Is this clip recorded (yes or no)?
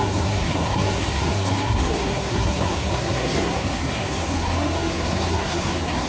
no